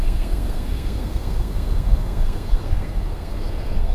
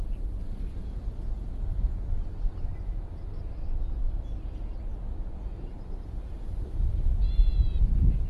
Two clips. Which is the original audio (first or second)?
second